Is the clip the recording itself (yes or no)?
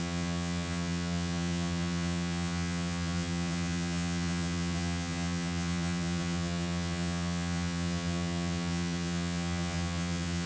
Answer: no